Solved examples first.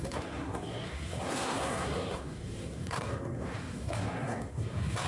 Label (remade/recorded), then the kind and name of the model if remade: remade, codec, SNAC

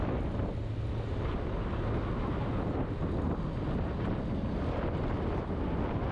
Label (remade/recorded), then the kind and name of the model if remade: recorded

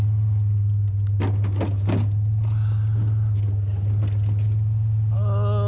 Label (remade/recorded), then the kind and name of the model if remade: recorded